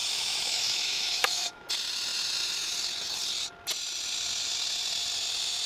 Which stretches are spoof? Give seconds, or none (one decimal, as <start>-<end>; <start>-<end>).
0.0-1.7